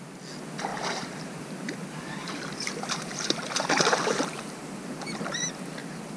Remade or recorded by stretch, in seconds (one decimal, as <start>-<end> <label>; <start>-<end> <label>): 0.0-0.7 recorded; 0.7-4.4 remade; 4.4-6.2 recorded